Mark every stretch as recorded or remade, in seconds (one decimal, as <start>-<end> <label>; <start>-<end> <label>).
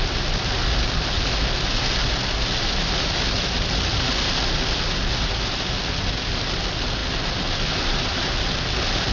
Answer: 0.0-9.1 recorded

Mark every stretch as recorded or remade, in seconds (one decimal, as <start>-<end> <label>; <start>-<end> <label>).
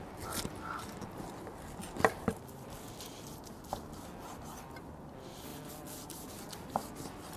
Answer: 0.0-7.4 recorded